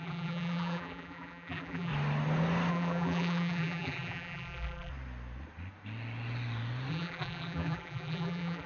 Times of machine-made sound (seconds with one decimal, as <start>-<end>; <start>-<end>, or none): 0.0-1.9; 2.7-4.9; 6.9-8.7